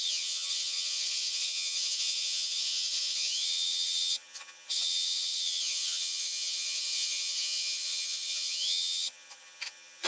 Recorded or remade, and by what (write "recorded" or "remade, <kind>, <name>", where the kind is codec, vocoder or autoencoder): remade, vocoder, HiFi-GAN